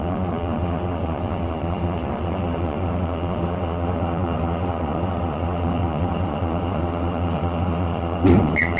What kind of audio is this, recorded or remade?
remade